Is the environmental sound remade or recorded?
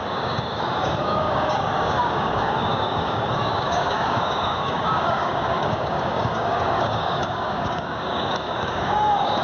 remade